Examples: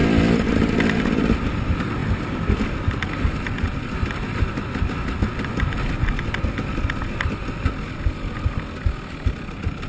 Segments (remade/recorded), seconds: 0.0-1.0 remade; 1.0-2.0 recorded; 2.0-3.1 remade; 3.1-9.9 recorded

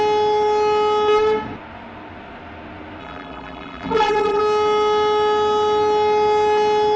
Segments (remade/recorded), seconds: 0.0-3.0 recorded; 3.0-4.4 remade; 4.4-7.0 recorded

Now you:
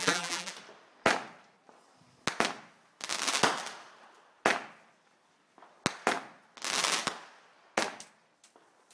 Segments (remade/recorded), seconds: 0.0-0.5 remade; 0.5-8.9 recorded

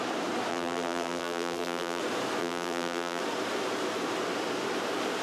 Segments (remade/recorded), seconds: 0.0-0.5 recorded; 0.5-2.0 remade; 2.0-2.4 recorded; 2.4-3.2 remade; 3.2-5.2 recorded

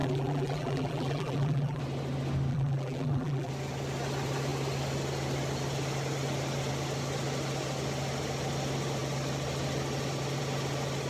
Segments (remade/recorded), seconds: 0.0-1.8 remade; 1.8-2.5 recorded; 2.5-3.5 remade; 3.5-11.1 recorded

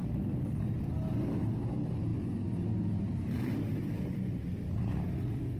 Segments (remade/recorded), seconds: 0.0-5.6 recorded